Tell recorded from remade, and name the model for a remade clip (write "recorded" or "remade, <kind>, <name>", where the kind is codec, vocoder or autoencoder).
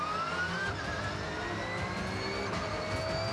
recorded